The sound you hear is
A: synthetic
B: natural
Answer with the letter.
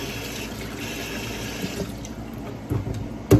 B